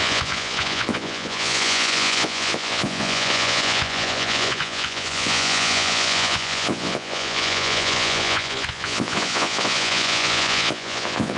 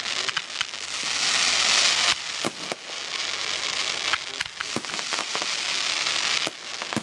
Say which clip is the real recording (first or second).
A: second